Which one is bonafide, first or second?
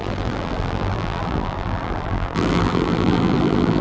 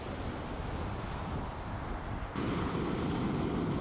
second